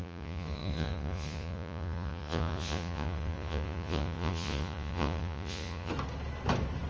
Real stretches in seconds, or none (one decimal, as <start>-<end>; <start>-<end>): 5.9-6.9